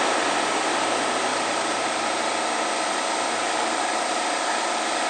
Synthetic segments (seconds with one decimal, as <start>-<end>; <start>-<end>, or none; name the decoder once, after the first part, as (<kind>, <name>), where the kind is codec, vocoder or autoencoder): 1.3-2.3 (vocoder, BigVGAN v2)